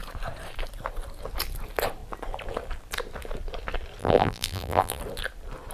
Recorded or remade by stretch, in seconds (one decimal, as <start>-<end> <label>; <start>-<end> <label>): 0.0-4.0 recorded; 4.0-5.0 remade; 5.0-5.7 recorded